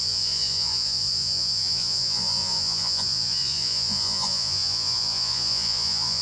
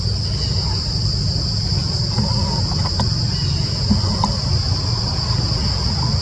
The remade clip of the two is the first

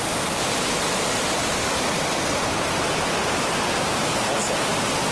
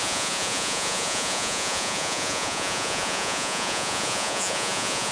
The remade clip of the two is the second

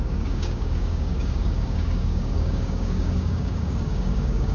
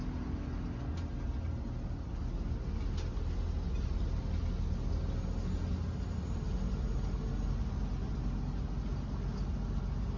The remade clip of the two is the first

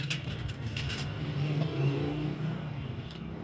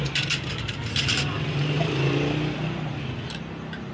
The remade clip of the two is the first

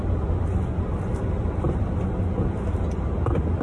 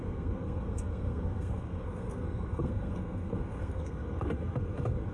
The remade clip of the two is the second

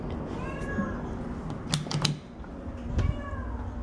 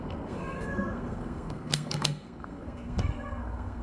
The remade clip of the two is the second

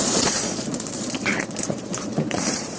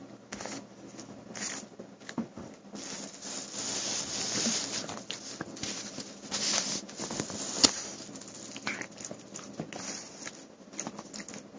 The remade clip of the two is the first